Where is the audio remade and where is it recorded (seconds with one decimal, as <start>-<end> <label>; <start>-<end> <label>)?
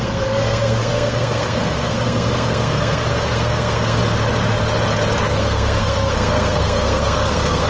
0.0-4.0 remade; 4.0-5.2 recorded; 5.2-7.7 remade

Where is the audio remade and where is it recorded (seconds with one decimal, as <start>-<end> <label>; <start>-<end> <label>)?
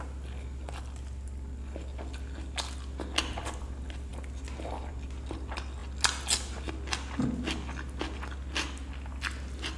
0.0-9.8 recorded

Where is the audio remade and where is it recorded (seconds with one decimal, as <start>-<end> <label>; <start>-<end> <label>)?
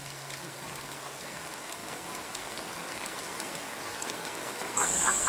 0.0-5.3 remade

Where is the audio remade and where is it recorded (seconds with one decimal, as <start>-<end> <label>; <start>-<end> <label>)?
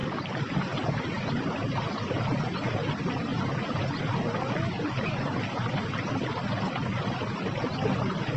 0.0-8.4 recorded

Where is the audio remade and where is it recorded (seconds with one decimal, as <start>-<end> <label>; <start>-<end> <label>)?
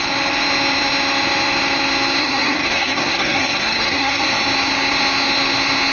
0.0-2.2 recorded; 2.2-4.2 remade; 4.2-5.9 recorded